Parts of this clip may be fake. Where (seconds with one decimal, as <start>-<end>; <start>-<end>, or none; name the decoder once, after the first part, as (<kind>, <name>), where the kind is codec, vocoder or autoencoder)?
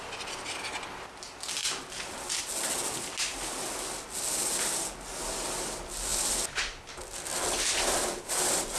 none